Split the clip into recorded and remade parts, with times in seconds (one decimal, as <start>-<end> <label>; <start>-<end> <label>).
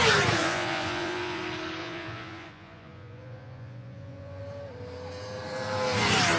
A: 0.0-0.4 recorded; 0.4-1.4 remade; 1.4-1.8 recorded; 1.8-4.4 remade; 4.4-6.4 recorded